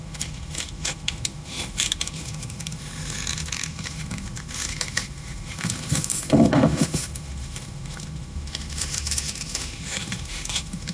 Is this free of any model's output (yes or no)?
no